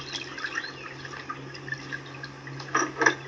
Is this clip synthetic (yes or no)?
no